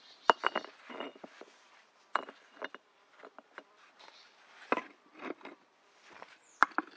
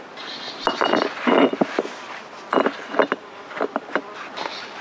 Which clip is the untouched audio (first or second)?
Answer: second